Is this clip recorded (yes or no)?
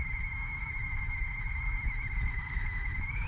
no